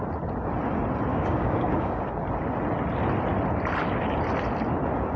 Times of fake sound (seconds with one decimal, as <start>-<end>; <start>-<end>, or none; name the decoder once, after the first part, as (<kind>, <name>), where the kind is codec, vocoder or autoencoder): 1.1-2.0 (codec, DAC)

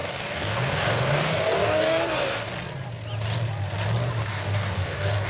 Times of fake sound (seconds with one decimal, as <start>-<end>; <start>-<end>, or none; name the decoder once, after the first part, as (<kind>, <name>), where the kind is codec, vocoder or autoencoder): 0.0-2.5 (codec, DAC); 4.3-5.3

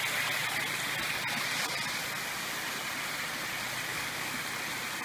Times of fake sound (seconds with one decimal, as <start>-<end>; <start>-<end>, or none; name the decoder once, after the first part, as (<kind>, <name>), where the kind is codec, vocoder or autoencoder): 3.9-4.4 (codec, DAC)

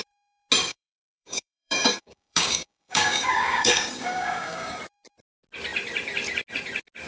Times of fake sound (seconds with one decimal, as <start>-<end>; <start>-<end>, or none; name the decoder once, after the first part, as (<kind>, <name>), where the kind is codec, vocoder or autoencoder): 0.7-4.8 (codec, DAC)

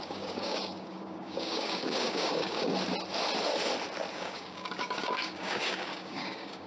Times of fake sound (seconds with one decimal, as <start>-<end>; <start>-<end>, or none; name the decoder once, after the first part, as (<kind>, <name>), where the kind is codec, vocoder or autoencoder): 0.0-2.7 (codec, DAC); 4.1-6.7

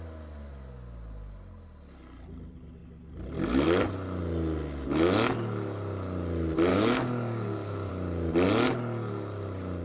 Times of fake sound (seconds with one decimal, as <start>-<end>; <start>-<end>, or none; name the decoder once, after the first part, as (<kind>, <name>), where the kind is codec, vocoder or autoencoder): 6.7-7.9 (codec, DAC)